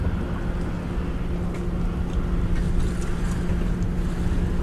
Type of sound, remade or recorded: recorded